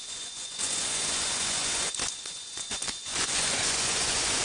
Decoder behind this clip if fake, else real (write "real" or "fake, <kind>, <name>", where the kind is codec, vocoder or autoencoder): fake, vocoder, Vocos